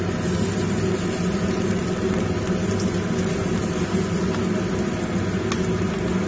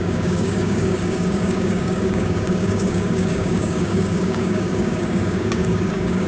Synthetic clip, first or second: second